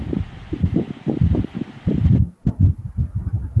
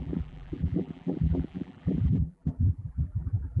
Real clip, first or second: first